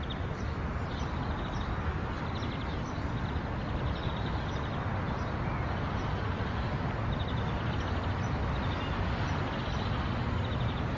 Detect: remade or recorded recorded